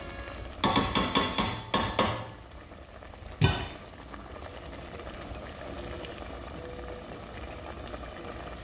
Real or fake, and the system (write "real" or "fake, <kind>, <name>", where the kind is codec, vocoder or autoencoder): real